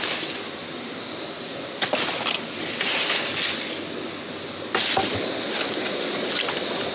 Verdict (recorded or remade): recorded